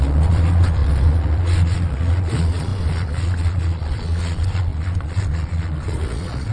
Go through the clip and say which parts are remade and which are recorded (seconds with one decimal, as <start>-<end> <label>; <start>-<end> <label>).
0.0-6.5 remade